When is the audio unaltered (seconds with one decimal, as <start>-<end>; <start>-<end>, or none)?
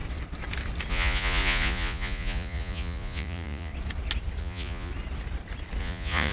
0.0-0.9; 3.7-4.4; 4.9-5.8